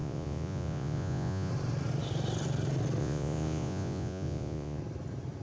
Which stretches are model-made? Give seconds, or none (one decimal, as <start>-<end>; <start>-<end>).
0.0-1.5; 3.0-4.8